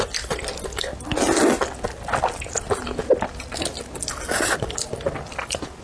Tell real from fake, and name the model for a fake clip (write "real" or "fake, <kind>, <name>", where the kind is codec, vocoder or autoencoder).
real